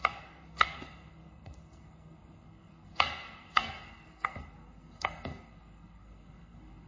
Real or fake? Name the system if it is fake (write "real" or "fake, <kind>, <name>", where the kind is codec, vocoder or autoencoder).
fake, codec, SNAC